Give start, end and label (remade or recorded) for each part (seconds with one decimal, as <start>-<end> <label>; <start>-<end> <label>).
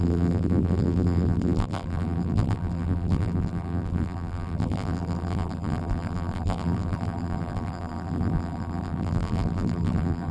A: 0.0-10.3 remade